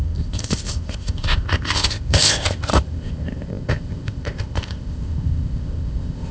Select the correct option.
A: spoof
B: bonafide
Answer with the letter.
A